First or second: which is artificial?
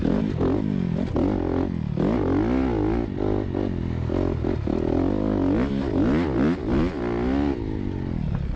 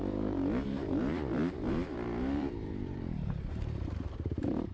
second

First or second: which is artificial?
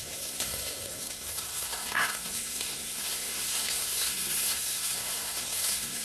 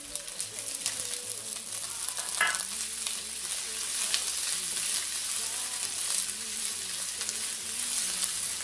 first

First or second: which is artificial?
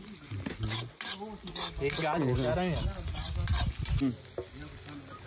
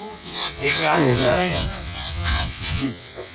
second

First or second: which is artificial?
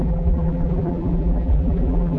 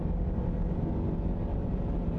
first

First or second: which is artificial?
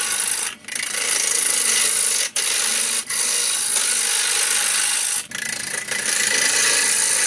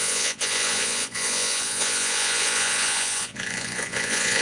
second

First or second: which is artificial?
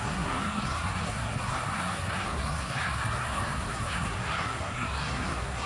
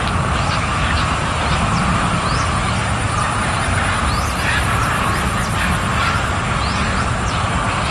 first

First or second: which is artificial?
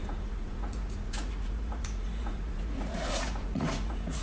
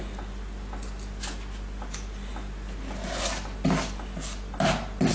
first